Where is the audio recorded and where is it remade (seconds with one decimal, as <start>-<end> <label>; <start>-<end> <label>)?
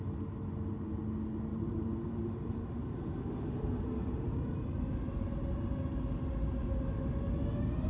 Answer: 0.0-1.5 recorded; 1.5-4.8 remade; 4.8-7.9 recorded